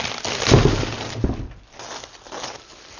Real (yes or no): yes